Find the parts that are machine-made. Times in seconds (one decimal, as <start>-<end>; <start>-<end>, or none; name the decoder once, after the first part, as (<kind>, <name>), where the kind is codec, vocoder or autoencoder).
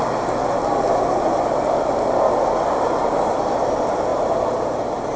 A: 0.4-3.5 (vocoder, BigVGAN v2); 4.1-5.2